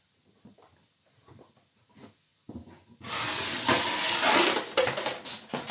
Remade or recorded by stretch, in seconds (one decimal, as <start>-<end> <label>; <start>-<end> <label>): 0.0-5.7 recorded